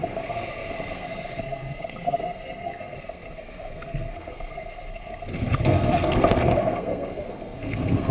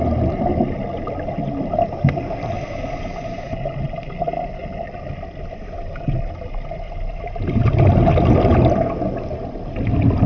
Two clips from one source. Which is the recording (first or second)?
second